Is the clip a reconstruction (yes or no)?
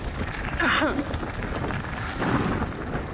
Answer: no